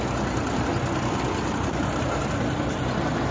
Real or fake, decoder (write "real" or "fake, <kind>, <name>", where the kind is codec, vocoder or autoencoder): real